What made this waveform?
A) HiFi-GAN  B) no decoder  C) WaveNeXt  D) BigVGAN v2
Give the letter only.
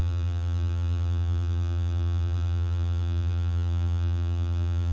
D